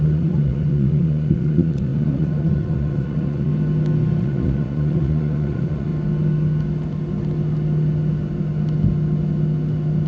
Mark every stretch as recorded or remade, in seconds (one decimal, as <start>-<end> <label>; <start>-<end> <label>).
0.0-3.5 remade; 3.5-4.2 recorded; 4.2-5.9 remade; 5.9-10.1 recorded